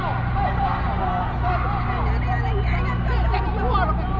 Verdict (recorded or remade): recorded